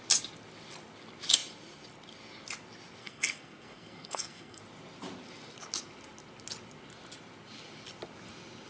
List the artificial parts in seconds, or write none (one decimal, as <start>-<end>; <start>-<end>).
3.0-4.6